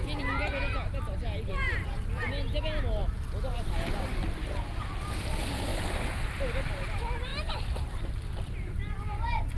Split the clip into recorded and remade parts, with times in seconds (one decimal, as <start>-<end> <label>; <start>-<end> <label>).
0.0-9.6 recorded